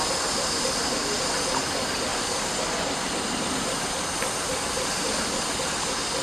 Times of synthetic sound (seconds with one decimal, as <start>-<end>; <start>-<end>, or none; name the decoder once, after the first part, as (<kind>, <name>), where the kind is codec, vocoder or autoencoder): none